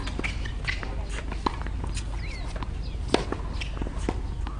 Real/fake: real